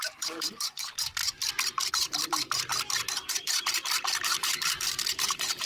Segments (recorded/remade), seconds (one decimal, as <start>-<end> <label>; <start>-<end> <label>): 0.0-1.2 remade; 1.2-1.9 recorded; 1.9-2.7 remade; 2.7-3.3 recorded; 3.3-5.7 remade